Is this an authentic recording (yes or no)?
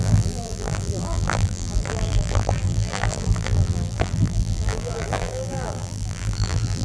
no